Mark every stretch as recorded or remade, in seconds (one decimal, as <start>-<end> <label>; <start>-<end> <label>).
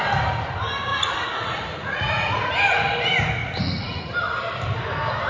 0.0-0.9 recorded; 0.9-2.5 remade; 2.5-3.4 recorded; 3.4-4.0 remade; 4.0-5.3 recorded